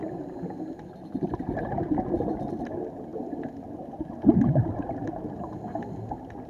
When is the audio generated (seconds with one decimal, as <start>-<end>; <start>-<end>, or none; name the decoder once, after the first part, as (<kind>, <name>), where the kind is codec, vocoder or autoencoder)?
none